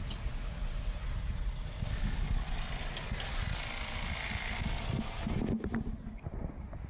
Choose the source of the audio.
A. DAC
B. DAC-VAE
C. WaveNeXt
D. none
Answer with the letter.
D